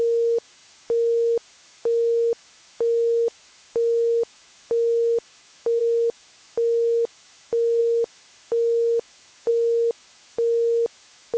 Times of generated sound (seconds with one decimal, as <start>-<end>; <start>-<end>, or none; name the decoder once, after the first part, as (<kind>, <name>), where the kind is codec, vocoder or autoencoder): 0.0-11.4 (autoencoder, DAC-VAE)